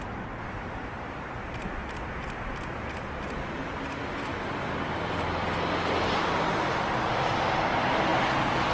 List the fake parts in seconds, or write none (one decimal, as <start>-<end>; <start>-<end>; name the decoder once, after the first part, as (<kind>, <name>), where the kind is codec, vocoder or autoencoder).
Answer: none